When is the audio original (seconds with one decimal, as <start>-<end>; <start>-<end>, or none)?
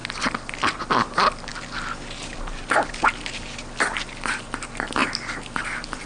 0.0-6.1